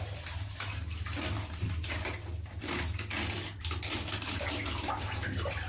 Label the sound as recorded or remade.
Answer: recorded